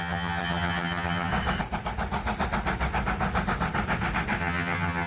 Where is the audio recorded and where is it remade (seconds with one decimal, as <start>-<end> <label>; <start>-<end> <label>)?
0.0-1.3 remade; 1.3-4.4 recorded; 4.4-5.1 remade